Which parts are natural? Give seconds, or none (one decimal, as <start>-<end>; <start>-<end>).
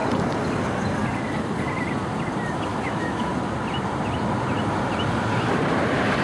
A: 0.0-2.7; 3.3-6.2